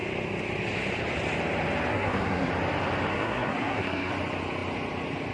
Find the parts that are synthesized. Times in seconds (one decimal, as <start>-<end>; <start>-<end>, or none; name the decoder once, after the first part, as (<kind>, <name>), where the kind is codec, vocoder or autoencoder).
1.9-2.5 (codec, SNAC); 3.1-4.1